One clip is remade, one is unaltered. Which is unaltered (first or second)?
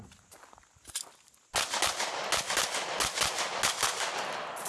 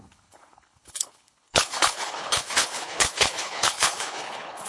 first